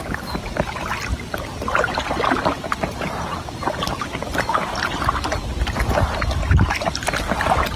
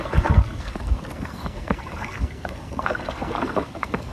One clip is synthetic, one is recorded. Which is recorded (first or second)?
first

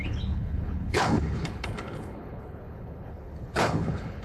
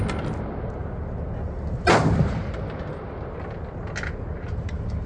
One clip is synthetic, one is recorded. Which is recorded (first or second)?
second